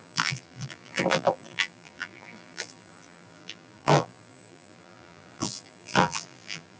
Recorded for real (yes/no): no